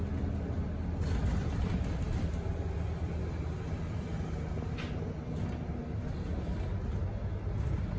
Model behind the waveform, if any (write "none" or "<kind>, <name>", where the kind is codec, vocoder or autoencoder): none